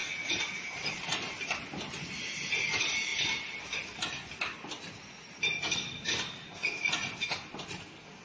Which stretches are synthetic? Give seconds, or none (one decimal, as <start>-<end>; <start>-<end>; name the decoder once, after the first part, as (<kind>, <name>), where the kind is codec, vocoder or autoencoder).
none